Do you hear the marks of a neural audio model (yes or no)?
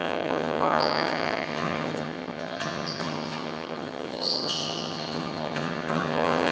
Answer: yes